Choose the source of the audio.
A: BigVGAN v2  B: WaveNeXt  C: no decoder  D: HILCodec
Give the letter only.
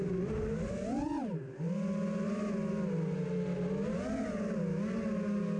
C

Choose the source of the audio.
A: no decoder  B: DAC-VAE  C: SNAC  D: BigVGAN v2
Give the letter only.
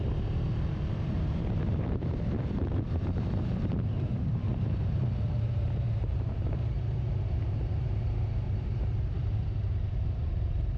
D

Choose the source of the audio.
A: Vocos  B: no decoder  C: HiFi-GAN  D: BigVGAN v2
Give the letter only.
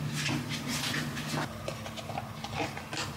B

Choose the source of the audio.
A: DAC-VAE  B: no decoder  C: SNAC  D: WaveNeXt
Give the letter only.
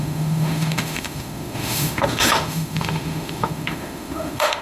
A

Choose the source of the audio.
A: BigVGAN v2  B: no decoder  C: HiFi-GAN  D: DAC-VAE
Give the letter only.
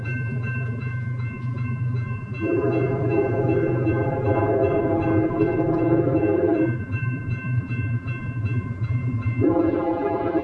A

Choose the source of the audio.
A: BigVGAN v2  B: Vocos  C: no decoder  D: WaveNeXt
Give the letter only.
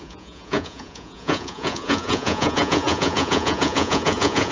B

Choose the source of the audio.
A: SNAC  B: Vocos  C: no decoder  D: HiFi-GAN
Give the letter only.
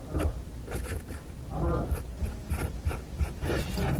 C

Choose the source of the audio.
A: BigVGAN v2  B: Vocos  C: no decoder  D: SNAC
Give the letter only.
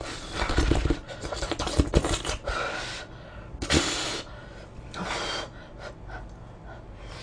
C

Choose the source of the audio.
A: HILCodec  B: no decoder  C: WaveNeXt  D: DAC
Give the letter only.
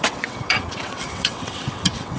C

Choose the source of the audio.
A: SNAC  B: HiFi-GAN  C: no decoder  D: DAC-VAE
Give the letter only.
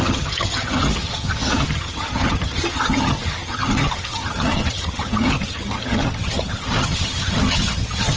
B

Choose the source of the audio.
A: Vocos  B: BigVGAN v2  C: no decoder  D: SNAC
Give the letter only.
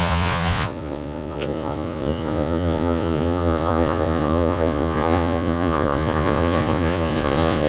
A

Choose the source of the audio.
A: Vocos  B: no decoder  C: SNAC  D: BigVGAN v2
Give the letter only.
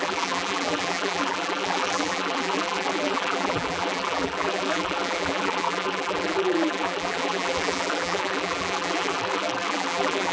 D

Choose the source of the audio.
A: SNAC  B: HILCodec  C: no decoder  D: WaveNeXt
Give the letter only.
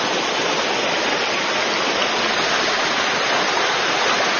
C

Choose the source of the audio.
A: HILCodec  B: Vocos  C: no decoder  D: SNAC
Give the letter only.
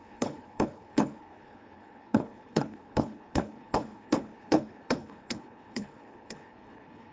A